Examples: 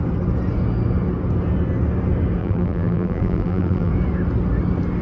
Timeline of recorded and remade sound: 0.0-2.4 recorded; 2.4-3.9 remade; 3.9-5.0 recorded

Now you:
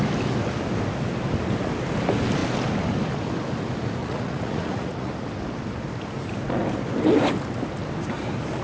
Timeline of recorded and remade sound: 0.0-4.0 recorded; 4.0-5.1 remade; 5.1-8.6 recorded

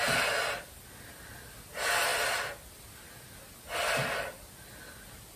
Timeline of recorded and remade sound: 0.0-5.4 recorded